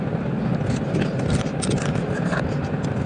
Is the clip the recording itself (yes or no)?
yes